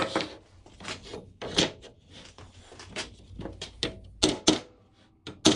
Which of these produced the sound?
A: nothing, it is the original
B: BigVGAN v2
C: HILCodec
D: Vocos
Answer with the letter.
A